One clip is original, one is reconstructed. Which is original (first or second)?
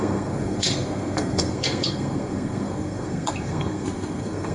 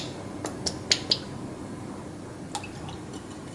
second